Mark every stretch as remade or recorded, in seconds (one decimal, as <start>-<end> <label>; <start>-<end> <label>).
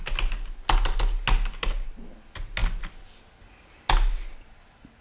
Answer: 0.0-5.0 recorded